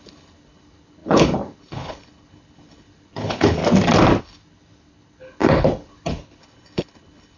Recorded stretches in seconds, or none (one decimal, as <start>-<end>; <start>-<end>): 3.6-4.2